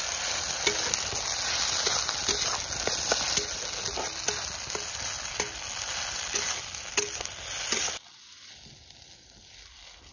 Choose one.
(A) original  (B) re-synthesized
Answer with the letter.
A